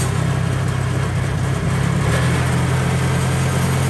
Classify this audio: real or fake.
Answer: real